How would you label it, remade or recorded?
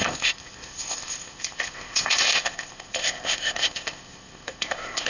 remade